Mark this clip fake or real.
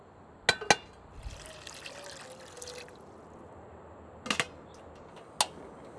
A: real